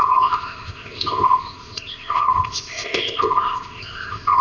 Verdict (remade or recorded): remade